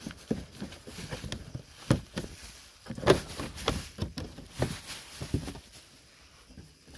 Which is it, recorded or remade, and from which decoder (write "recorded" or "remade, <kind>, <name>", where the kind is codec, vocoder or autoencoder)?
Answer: recorded